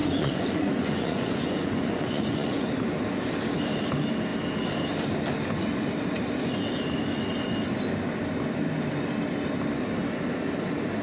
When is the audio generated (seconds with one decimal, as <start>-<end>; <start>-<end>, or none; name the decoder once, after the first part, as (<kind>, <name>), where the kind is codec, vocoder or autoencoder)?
0.0-2.7 (vocoder, Vocos)